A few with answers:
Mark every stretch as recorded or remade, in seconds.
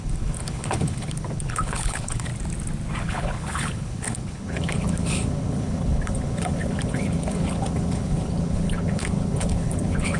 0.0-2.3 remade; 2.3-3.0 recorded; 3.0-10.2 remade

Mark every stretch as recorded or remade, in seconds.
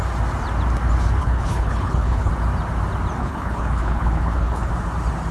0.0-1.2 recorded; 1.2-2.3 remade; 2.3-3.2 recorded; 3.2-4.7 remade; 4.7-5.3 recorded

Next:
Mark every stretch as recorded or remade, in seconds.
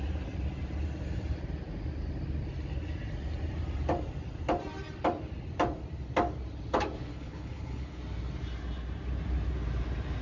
0.0-7.1 recorded; 7.1-8.0 remade; 8.0-10.2 recorded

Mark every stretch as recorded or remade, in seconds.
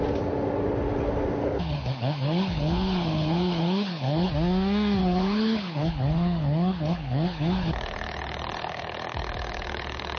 0.0-1.4 recorded; 1.4-4.3 remade; 4.3-5.0 recorded; 5.0-10.2 remade